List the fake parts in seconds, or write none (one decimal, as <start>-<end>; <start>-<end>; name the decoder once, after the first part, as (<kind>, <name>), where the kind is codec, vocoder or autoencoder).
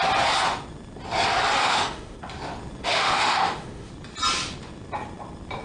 1.6-2.2 (autoencoder, DAC-VAE); 2.8-3.9